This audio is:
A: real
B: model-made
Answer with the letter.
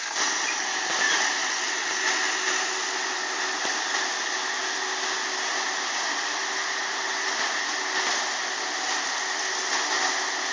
A